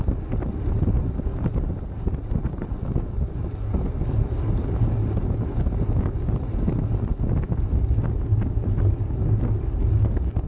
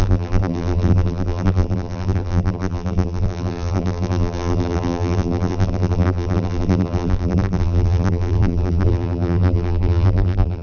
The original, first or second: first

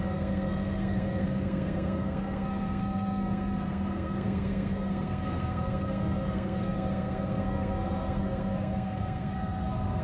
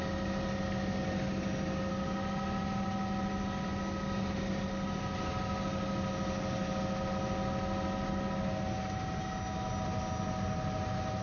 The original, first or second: second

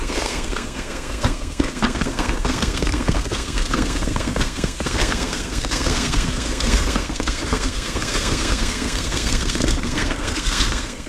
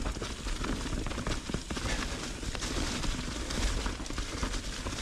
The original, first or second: second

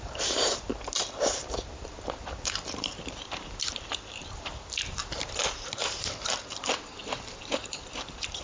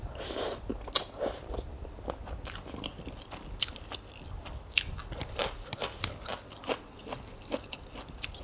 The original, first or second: second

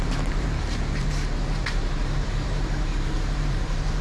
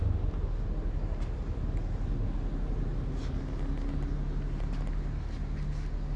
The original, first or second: second